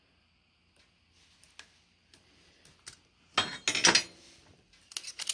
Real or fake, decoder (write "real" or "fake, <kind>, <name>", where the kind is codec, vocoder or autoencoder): real